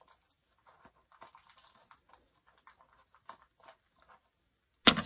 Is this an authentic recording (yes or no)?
yes